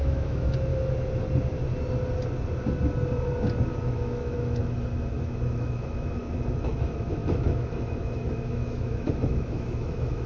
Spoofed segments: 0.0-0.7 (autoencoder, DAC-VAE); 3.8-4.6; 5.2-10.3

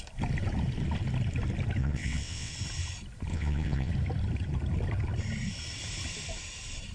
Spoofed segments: 1.8-2.5 (vocoder, WaveNeXt); 3.3-3.9